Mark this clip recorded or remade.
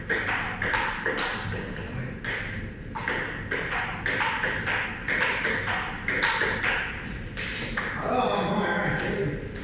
recorded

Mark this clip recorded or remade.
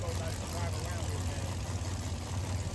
recorded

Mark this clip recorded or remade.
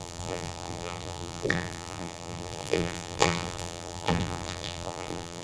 remade